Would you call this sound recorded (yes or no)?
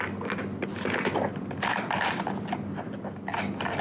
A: yes